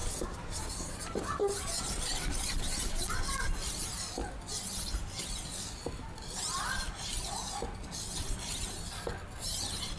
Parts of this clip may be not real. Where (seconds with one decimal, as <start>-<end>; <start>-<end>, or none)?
0.0-3.1